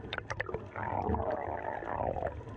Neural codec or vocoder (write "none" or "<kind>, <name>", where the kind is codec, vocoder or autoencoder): none